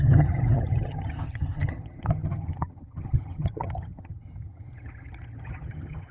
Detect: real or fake fake